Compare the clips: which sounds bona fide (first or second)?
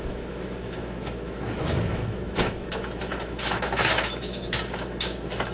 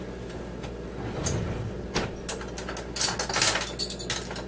second